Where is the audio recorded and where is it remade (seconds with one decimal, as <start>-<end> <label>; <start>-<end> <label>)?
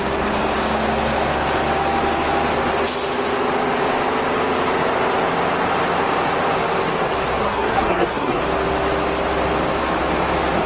0.0-7.4 recorded; 7.4-8.4 remade; 8.4-10.7 recorded